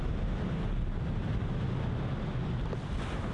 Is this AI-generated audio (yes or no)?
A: no